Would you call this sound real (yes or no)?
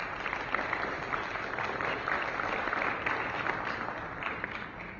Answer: yes